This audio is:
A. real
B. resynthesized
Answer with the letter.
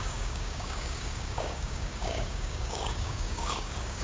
B